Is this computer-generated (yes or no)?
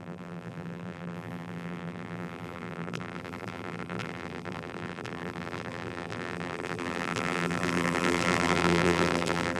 yes